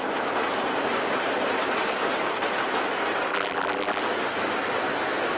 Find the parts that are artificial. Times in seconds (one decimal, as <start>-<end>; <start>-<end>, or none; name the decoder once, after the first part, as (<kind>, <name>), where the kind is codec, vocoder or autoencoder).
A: 3.3-4.0 (vocoder, BigVGAN v2)